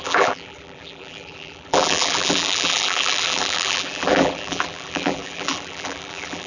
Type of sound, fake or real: fake